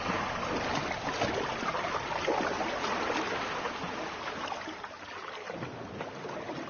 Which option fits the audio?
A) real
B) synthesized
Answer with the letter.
A